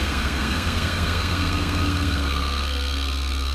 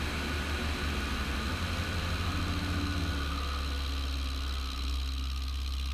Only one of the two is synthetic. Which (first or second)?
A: first